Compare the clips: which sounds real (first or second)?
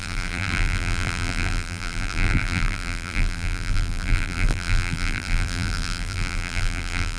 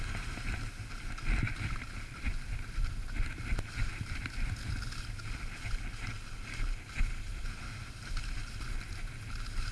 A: second